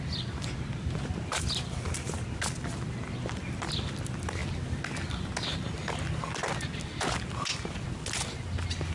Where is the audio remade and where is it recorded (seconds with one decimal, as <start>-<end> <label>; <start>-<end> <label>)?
0.0-8.9 recorded